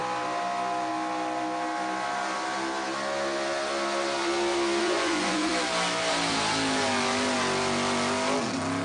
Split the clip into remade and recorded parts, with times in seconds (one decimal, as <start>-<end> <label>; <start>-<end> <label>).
0.0-4.8 recorded; 4.8-5.5 remade; 5.5-8.8 recorded